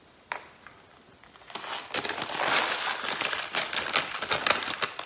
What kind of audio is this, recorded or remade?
recorded